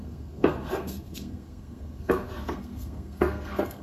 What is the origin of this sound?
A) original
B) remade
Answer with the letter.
B